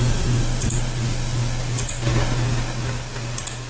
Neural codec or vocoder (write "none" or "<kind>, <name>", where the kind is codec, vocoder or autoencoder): none